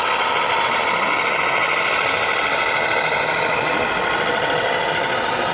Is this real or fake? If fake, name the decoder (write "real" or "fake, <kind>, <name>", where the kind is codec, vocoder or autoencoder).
real